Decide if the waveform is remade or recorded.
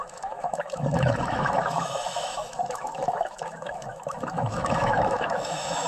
remade